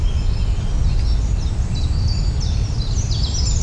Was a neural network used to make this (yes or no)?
no